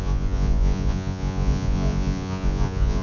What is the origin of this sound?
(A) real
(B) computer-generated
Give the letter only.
B